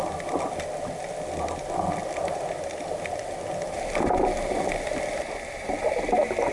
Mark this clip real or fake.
real